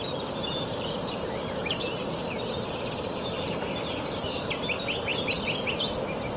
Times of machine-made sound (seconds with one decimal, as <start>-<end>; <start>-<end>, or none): 0.7-4.5